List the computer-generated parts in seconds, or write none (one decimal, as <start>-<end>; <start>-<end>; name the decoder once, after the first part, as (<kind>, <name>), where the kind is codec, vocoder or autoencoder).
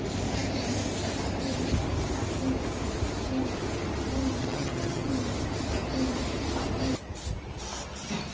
4.4-5.1 (vocoder, HiFi-GAN)